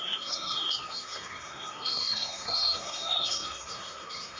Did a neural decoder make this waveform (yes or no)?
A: yes